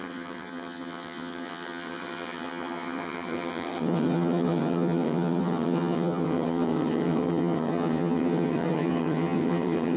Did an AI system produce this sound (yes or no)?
yes